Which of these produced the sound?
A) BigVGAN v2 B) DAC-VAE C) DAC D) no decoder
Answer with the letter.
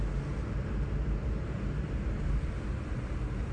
D